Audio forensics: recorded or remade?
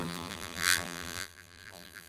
remade